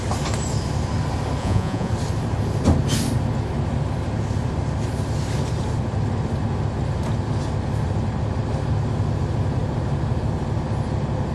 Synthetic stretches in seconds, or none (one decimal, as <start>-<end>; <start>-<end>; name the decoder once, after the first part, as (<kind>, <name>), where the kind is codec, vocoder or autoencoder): 1.4-1.9 (vocoder, Vocos)